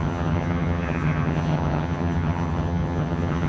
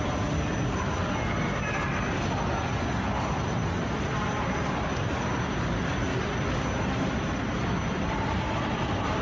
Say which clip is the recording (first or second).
second